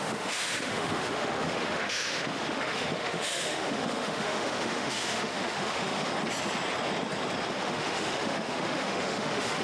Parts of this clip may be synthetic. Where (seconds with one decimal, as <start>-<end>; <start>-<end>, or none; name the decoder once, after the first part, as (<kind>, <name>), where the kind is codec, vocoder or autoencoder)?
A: 0.0-6.1 (autoencoder, DAC-VAE); 7.5-9.6